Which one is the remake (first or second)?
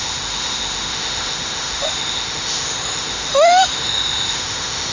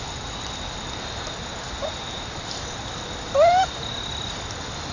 first